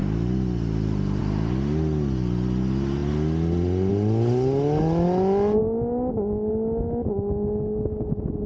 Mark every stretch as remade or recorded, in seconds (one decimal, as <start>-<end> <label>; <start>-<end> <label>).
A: 0.0-8.5 recorded